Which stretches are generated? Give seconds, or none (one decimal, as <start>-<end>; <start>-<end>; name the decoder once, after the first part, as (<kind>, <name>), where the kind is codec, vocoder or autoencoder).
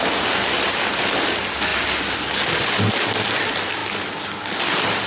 none